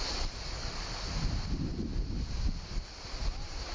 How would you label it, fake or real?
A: real